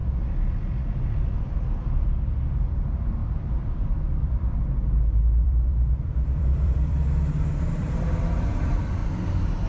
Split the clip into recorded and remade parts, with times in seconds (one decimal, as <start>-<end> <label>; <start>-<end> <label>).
0.0-1.3 recorded; 1.3-9.0 remade; 9.0-9.7 recorded